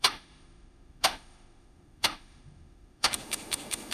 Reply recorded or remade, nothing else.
remade